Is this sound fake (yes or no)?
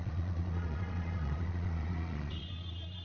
yes